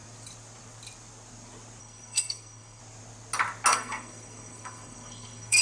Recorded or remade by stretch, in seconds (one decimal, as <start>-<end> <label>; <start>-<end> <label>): 0.0-1.8 recorded; 1.8-2.8 remade; 2.8-3.7 recorded; 3.7-5.6 remade